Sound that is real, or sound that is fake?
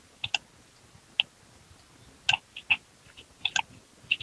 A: real